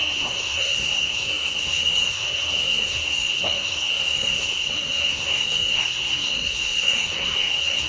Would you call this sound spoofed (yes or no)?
yes